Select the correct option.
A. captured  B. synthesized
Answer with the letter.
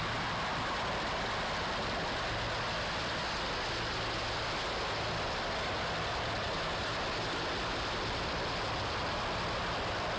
A